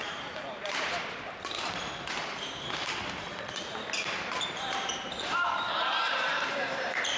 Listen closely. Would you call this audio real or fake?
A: fake